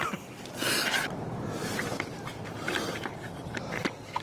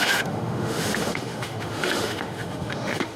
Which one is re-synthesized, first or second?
second